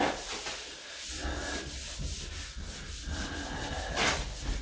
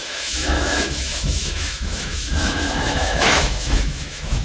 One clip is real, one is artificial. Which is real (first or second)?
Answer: first